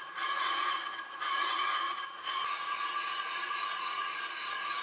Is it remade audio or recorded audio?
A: remade